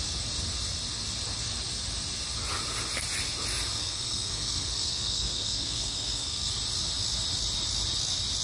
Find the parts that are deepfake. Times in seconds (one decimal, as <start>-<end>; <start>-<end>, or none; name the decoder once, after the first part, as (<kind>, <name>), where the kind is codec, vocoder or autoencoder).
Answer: 3.8-6.5 (codec, SNAC)